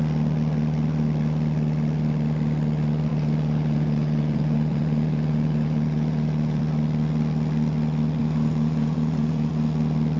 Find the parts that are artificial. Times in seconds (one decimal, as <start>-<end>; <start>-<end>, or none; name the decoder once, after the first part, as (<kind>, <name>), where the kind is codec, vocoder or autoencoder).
3.1-6.6 (vocoder, Vocos); 8.2-9.5